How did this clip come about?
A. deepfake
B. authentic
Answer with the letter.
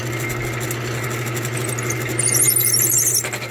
B